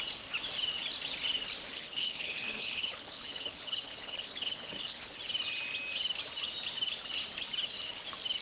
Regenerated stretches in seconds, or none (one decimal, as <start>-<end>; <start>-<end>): 1.7-5.2